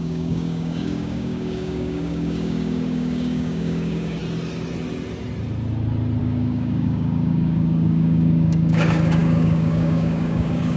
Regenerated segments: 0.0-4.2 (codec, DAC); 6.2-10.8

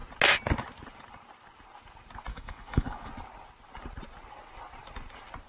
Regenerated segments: 2.3-3.1 (codec, DAC)

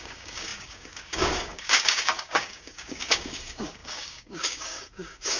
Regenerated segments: 0.0-5.4 (codec, DAC)

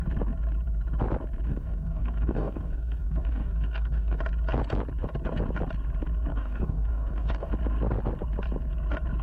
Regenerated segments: 1.5-4.2 (codec, DAC); 6.3-7.5

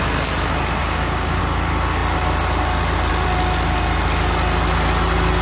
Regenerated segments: 0.8-1.4 (codec, DAC)